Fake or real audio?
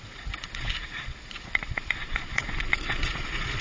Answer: fake